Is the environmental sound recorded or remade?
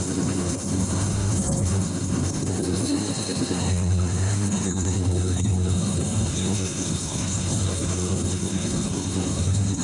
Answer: remade